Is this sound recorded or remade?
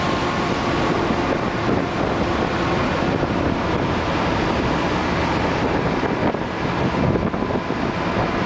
recorded